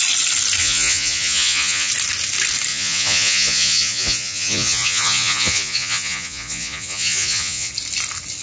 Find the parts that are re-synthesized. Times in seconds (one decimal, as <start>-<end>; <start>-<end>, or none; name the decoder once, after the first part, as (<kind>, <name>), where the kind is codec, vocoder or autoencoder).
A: 0.6-1.9 (vocoder, Vocos); 2.7-7.7